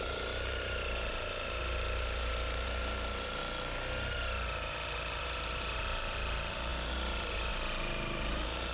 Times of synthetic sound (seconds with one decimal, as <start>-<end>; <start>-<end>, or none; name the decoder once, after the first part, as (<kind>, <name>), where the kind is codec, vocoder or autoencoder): 0.0-3.4 (vocoder, BigVGAN v2); 5.2-8.7